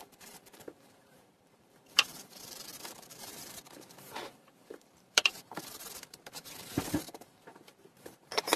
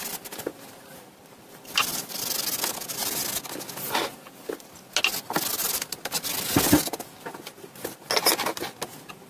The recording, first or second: second